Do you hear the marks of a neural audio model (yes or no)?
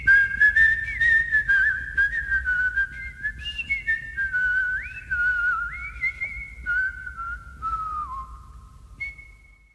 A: no